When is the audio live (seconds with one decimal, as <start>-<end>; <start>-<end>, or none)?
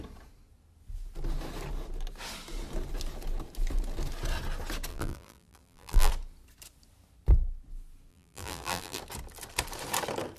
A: 0.0-4.9; 6.1-8.1; 9.0-10.4